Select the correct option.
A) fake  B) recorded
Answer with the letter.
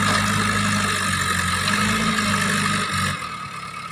B